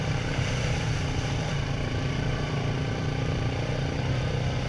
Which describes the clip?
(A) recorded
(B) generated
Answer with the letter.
B